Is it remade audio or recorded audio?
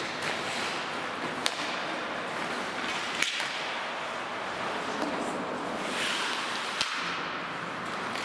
recorded